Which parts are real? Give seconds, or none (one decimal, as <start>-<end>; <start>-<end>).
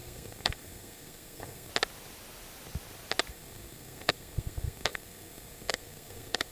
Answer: 1.7-3.3